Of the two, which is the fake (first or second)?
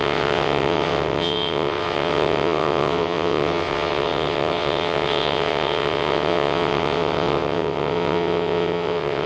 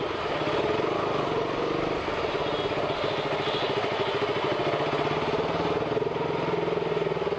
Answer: first